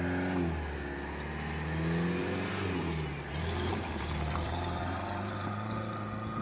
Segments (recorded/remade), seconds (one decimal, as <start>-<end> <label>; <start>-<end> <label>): 0.0-2.2 recorded; 2.2-5.5 remade; 5.5-6.4 recorded